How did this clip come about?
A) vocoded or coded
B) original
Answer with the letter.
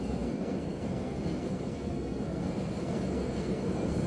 A